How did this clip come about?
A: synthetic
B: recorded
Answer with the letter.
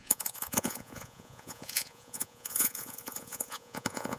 A